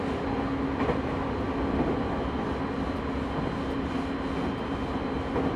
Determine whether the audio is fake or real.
real